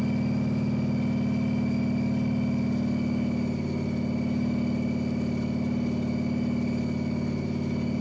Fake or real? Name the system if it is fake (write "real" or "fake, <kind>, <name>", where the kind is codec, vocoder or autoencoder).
real